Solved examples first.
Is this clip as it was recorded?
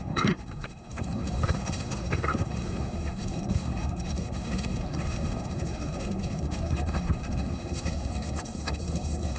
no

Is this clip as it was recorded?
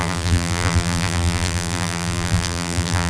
no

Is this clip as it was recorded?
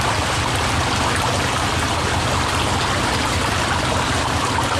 yes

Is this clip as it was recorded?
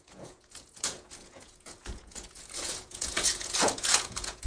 no